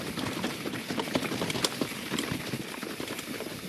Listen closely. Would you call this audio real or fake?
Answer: real